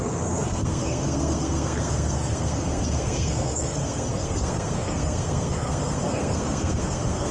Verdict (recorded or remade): remade